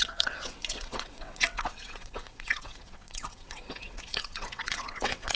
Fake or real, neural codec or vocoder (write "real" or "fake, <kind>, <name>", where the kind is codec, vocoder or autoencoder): fake, vocoder, WaveNeXt